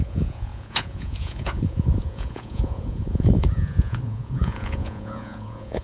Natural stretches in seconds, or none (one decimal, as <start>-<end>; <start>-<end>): none

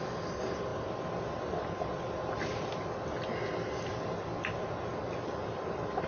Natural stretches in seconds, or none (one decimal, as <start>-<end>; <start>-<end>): 0.0-6.1

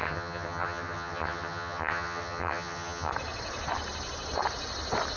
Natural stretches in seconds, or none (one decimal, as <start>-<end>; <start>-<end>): 3.1-5.2

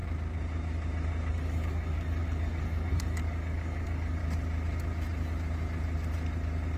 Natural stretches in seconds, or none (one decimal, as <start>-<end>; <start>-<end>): 0.0-1.3; 4.2-6.8

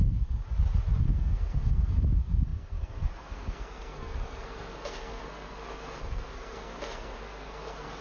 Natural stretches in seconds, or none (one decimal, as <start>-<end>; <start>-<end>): 0.4-1.0

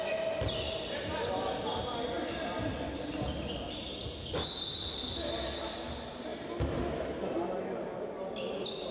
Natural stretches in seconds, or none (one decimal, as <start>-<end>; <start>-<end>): 0.0-8.9

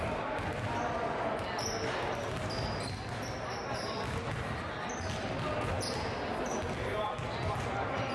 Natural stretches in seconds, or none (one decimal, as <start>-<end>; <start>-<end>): 0.0-8.1